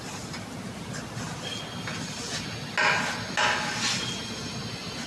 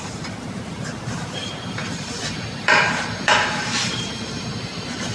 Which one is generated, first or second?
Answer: second